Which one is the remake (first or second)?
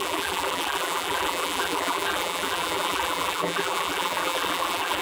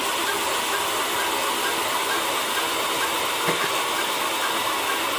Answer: first